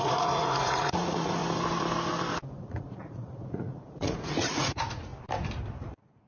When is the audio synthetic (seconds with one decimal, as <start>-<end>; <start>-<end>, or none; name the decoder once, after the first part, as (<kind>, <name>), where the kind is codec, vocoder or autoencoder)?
0.0-1.4 (vocoder, Vocos); 2.6-5.1; 5.8-6.3